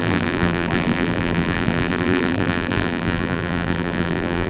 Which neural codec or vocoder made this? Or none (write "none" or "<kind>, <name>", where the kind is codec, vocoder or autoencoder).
vocoder, BigVGAN v2